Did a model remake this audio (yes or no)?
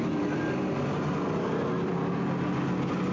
no